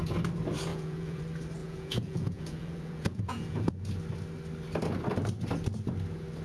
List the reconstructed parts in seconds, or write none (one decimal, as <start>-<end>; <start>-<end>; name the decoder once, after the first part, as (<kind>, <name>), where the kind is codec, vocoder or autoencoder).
0.7-1.2 (vocoder, Vocos); 1.6-3.7